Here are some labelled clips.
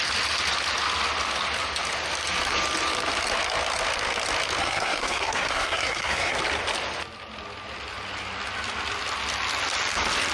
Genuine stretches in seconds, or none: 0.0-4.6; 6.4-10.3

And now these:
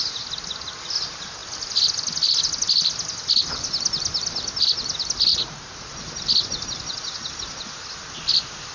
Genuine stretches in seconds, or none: 0.0-5.3; 5.9-8.7